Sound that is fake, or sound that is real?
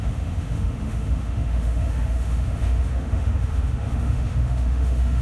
fake